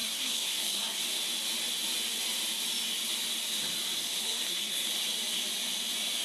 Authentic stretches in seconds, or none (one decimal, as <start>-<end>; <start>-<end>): 1.0-4.2; 4.9-6.2